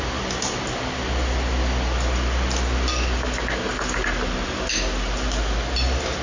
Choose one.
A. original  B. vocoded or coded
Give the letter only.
A